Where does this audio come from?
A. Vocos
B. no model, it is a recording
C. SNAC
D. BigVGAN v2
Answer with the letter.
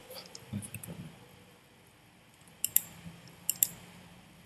B